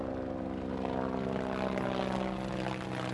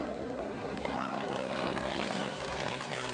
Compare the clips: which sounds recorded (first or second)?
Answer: first